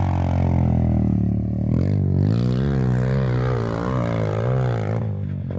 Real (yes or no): yes